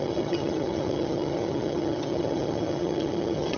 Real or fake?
fake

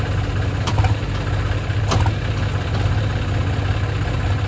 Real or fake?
real